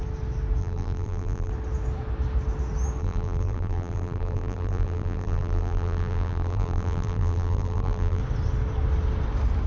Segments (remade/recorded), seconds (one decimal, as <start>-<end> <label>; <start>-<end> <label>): 0.0-0.6 recorded; 0.6-1.5 remade; 1.5-3.0 recorded; 3.0-8.2 remade; 8.2-9.7 recorded